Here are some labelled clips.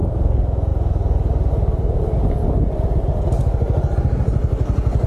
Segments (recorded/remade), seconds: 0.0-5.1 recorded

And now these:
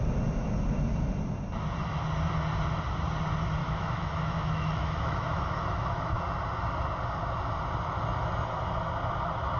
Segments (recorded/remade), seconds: 0.0-3.6 recorded; 3.6-6.2 remade; 6.2-9.6 recorded

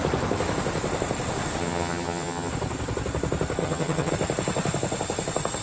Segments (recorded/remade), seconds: 0.0-1.6 recorded; 1.6-2.5 remade; 2.5-3.6 recorded; 3.6-4.1 remade; 4.1-5.6 recorded

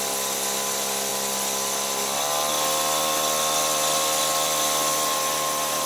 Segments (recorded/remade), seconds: 0.0-5.9 recorded

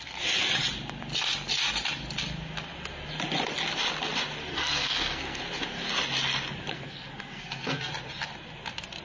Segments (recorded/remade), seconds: 0.0-4.5 recorded; 4.5-5.4 remade; 5.4-6.7 recorded; 6.7-7.9 remade; 7.9-9.0 recorded

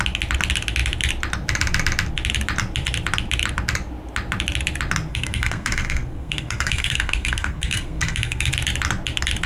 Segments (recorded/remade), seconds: 0.0-5.1 recorded; 5.1-8.5 remade; 8.5-9.5 recorded

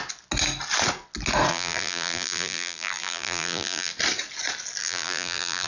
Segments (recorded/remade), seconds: 0.0-1.5 recorded; 1.5-3.9 remade; 3.9-4.8 recorded; 4.8-5.7 remade